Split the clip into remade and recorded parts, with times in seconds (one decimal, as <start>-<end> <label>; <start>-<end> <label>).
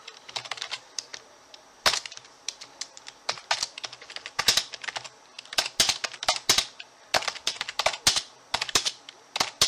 0.0-9.7 recorded